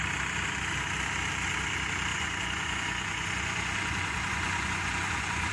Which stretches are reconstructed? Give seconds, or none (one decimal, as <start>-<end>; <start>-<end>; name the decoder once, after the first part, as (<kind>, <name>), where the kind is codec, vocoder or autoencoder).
2.1-5.5 (vocoder, Vocos)